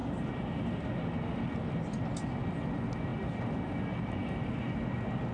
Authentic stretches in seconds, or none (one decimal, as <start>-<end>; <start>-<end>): 0.0-5.3